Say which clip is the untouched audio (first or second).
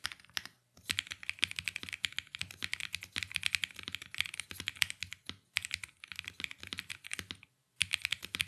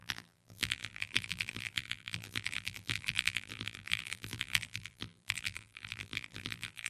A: first